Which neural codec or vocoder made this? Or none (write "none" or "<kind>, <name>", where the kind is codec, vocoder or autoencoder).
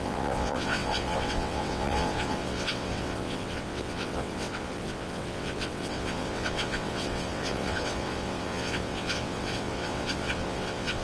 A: vocoder, WaveNeXt